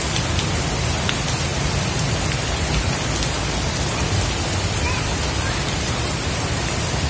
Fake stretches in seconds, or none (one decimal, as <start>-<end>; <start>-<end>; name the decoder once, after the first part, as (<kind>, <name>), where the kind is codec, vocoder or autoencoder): none